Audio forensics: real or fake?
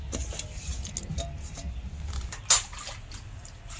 real